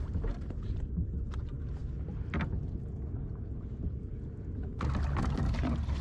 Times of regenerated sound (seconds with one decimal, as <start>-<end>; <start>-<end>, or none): none